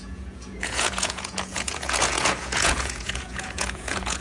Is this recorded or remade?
remade